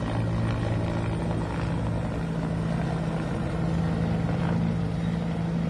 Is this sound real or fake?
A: real